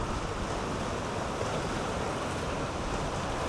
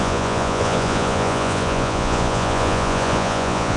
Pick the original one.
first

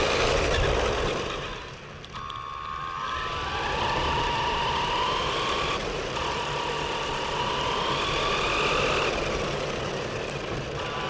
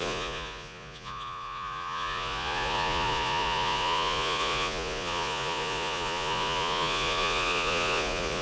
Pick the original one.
first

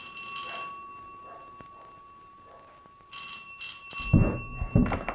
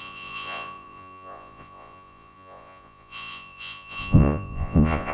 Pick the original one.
first